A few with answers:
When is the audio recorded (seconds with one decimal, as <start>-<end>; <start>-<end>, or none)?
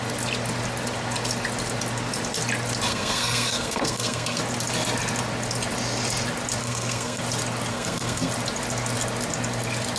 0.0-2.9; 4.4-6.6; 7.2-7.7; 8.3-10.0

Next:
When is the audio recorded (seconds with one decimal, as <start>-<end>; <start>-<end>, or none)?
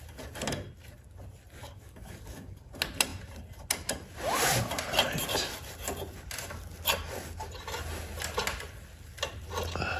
0.0-1.6; 2.7-10.0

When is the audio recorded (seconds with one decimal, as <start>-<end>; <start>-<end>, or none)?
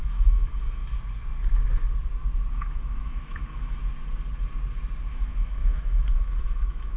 0.8-2.5; 3.8-5.1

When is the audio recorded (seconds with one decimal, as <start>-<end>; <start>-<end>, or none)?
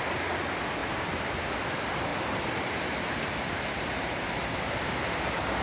0.0-0.8; 1.3-2.1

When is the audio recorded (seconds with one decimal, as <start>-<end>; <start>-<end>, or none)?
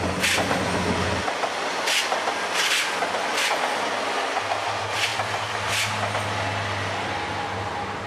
0.0-8.1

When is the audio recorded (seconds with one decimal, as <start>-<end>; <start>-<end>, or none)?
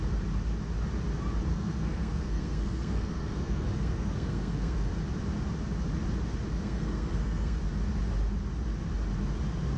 0.0-1.5; 4.9-6.5; 7.6-9.8